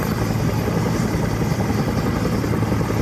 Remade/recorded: recorded